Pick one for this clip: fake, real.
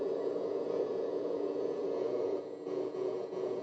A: fake